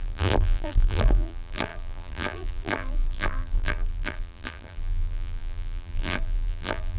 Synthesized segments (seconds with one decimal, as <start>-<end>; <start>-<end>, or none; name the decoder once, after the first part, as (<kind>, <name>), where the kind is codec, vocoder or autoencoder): 0.0-7.0 (vocoder, BigVGAN v2)

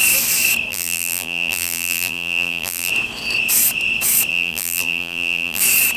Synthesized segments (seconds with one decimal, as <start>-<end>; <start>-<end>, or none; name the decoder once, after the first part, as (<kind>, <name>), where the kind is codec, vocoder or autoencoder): 0.7-2.9 (vocoder, BigVGAN v2); 4.3-5.6

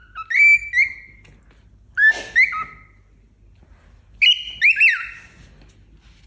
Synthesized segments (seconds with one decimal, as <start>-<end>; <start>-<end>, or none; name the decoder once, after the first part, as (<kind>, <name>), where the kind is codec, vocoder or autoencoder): none

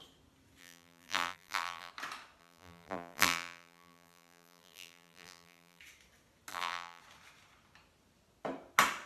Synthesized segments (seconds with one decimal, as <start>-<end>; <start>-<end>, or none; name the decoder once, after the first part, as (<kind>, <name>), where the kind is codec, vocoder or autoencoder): 0.6-1.9 (vocoder, BigVGAN v2); 2.4-5.8; 6.5-7.0

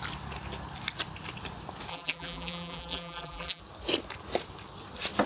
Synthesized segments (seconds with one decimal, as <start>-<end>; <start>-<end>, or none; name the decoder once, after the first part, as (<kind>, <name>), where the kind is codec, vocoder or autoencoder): 1.9-3.6 (vocoder, BigVGAN v2)